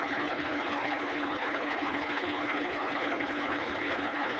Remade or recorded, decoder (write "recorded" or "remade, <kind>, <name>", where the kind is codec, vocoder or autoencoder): remade, codec, HILCodec